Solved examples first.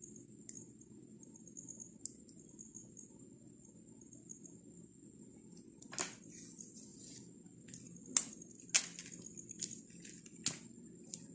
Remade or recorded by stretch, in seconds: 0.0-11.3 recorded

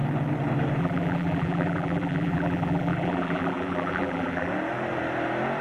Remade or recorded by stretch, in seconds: 0.0-0.8 recorded; 0.8-4.5 remade; 4.5-5.6 recorded

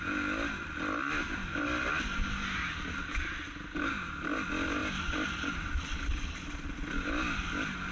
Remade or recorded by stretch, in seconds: 0.0-7.9 recorded

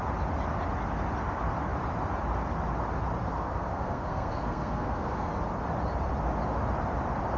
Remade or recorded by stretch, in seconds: 0.0-3.2 recorded; 3.2-5.3 remade; 5.3-7.4 recorded

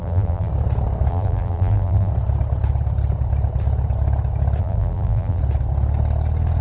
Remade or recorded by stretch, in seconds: 0.0-0.5 remade; 0.5-1.1 recorded; 1.1-2.1 remade; 2.1-4.6 recorded; 4.6-5.4 remade; 5.4-6.6 recorded